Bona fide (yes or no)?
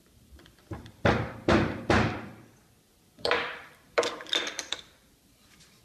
no